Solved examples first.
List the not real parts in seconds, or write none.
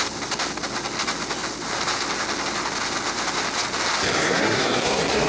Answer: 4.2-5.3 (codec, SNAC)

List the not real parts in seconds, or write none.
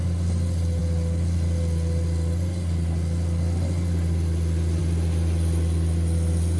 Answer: none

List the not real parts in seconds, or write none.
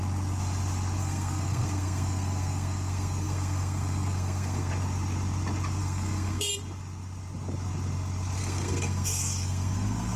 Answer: 1.0-4.7 (codec, SNAC); 5.8-6.5; 8.4-10.2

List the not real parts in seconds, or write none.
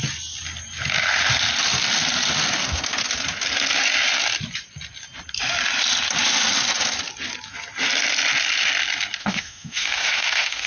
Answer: 9.2-10.7 (autoencoder, DAC-VAE)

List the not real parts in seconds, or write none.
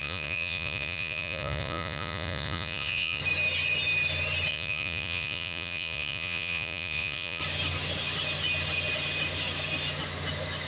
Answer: 0.0-3.2 (vocoder, Vocos); 4.5-7.4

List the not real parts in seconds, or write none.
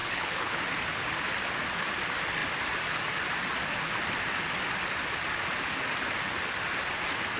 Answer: 0.0-0.6 (codec, HILCodec)